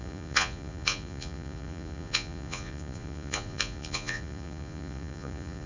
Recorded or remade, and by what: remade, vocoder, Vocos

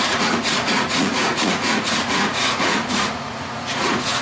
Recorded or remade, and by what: remade, vocoder, Vocos